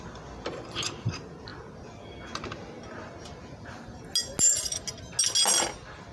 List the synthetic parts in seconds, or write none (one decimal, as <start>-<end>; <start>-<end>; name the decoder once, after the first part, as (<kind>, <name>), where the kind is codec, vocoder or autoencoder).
none